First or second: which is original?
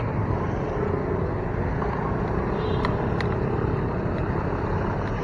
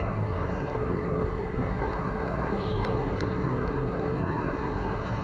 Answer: first